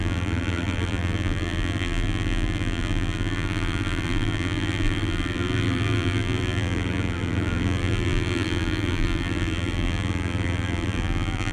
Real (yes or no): no